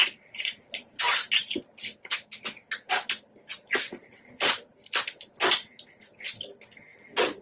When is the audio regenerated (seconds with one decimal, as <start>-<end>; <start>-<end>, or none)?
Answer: 0.0-1.0; 3.5-4.5; 6.9-7.4